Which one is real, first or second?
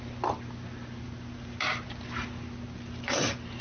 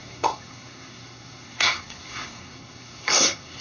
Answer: first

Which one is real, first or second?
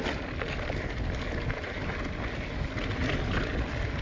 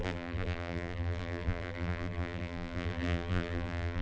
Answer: first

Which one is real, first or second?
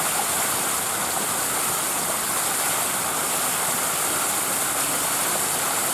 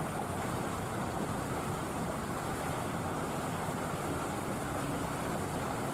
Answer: second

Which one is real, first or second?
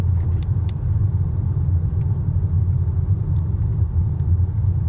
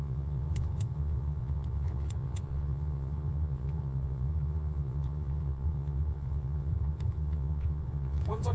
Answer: first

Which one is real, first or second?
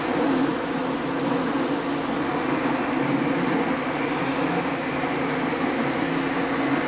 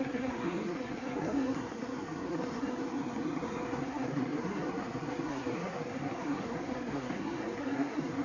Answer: first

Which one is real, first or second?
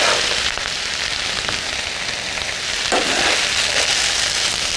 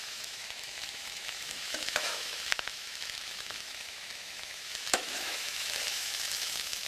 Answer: first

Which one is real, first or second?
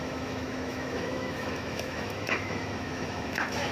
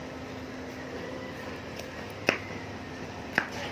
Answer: second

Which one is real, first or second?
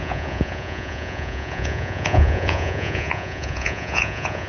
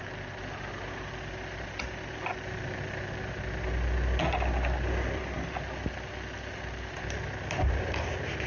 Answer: second